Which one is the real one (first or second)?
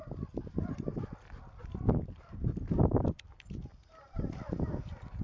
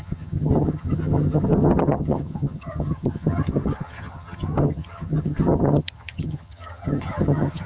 first